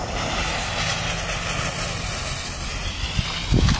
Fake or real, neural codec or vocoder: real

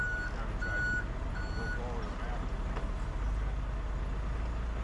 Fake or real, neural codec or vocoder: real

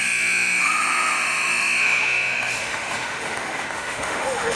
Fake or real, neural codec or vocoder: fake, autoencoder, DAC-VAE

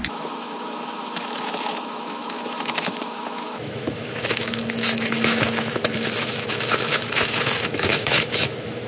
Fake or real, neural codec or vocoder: fake, autoencoder, DAC-VAE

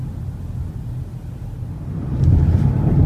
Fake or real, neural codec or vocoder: real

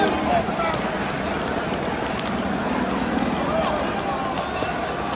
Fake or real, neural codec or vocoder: real